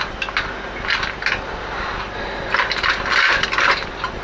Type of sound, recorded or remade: recorded